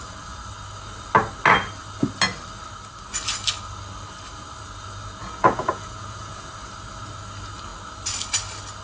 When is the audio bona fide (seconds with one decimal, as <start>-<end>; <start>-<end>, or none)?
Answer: 0.0-5.2; 6.5-8.8